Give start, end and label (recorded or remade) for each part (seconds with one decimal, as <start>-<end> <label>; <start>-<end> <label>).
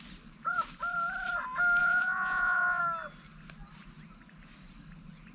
0.0-1.8 recorded; 1.8-2.8 remade; 2.8-5.3 recorded